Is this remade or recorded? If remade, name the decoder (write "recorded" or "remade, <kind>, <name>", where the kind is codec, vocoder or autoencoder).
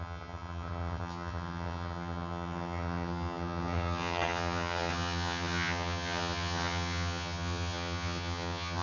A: remade, vocoder, HiFi-GAN